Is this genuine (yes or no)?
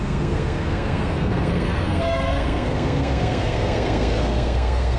no